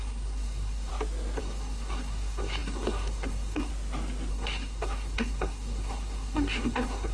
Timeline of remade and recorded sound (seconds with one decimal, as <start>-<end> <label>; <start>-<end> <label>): 0.0-0.9 remade; 0.9-1.4 recorded; 1.4-3.7 remade; 3.7-4.3 recorded; 4.3-7.1 remade